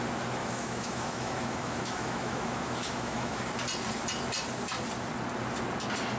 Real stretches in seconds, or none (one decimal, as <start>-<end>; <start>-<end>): 0.0-0.4; 3.4-6.2